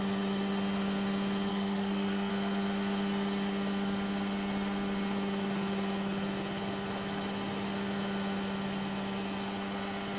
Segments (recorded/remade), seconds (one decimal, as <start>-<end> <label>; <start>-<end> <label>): 0.0-1.5 recorded; 1.5-2.3 remade; 2.3-10.2 recorded